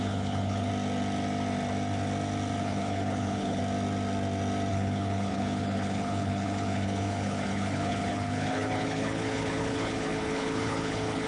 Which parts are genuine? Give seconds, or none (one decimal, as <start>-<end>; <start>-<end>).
0.7-2.6; 3.6-4.7